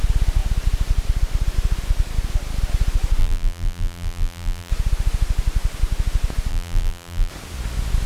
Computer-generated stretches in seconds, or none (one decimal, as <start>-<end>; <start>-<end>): 3.2-4.7; 6.5-7.3